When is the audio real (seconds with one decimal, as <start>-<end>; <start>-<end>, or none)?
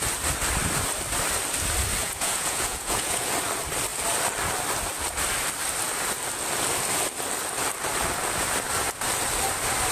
0.0-2.0; 3.3-9.9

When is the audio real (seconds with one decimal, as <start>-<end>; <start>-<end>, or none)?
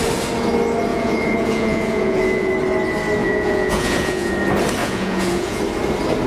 0.0-0.9; 2.5-3.2; 4.3-4.8; 5.6-6.3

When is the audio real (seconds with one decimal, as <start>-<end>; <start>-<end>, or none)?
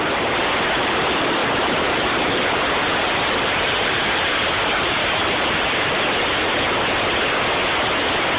0.0-1.4; 6.0-8.4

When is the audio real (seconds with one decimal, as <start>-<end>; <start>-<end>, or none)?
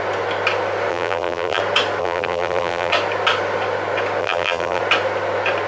0.0-0.9; 1.6-2.0; 2.9-4.2; 4.8-5.7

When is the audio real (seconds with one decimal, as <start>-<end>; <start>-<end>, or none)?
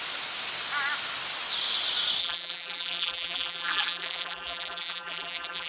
0.0-2.2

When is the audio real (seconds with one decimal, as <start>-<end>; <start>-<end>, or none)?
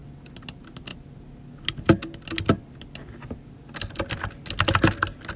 0.0-5.4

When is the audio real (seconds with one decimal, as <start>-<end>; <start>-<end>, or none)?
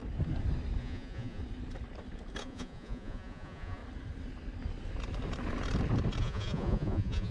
0.0-0.8; 1.4-2.4; 3.8-6.2